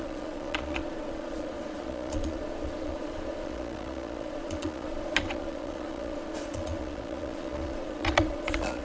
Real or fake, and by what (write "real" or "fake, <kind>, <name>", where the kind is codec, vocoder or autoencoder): fake, vocoder, Vocos